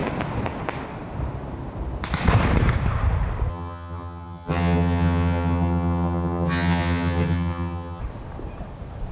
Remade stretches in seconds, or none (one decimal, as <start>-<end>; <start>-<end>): 3.5-8.0